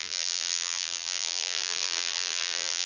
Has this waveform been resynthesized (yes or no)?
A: yes